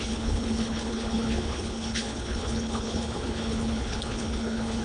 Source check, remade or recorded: remade